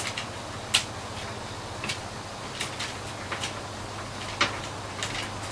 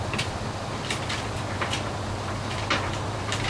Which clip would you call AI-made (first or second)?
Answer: second